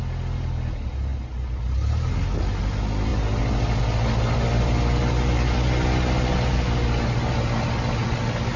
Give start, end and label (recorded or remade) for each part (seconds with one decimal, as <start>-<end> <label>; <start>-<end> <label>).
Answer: 0.0-8.6 recorded